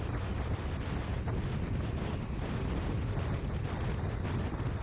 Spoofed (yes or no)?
no